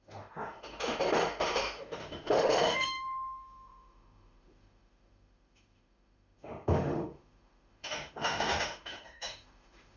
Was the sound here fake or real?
fake